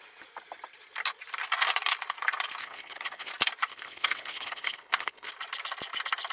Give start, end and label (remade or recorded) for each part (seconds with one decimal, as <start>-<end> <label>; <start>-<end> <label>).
0.0-2.6 recorded; 2.6-3.3 remade; 3.3-3.7 recorded; 3.7-5.3 remade; 5.3-6.3 recorded

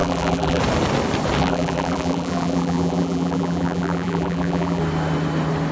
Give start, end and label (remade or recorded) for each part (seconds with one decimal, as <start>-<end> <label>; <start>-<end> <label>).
0.0-0.6 remade; 0.6-1.4 recorded; 1.4-4.8 remade; 4.8-5.7 recorded

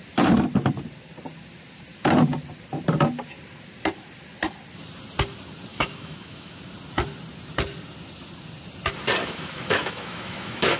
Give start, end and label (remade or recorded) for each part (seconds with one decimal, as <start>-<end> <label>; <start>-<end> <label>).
0.0-5.7 recorded; 5.7-6.6 remade; 6.6-9.2 recorded; 9.2-10.8 remade

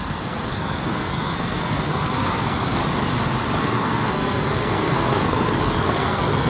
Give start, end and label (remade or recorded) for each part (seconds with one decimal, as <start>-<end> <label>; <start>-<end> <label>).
0.0-2.8 remade; 2.8-3.6 recorded; 3.6-6.5 remade

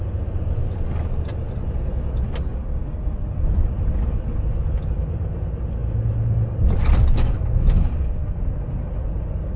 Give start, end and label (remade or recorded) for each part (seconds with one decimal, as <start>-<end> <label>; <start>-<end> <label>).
0.0-9.6 recorded